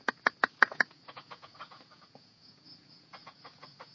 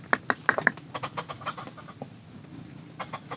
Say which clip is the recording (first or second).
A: second